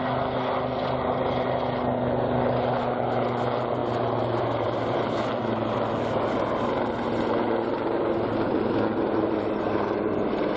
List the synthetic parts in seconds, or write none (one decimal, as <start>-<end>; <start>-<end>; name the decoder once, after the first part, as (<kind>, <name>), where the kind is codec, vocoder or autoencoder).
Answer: 3.8-5.2 (vocoder, BigVGAN v2)